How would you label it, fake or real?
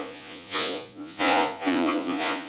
fake